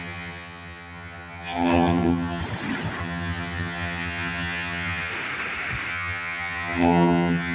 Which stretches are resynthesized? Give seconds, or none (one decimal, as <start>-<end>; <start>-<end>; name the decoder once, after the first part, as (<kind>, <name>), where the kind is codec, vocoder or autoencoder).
0.0-2.4 (vocoder, HiFi-GAN); 3.0-5.1; 5.9-7.5

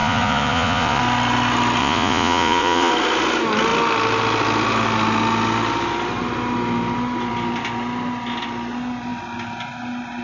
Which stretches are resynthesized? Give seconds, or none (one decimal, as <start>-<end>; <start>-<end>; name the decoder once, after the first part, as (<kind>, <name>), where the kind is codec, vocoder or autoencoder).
0.0-1.0 (vocoder, Vocos); 1.8-2.9